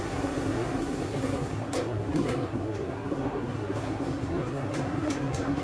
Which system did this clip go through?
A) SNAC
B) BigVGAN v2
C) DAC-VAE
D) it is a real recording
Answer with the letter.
A